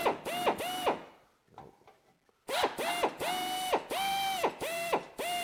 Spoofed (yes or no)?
no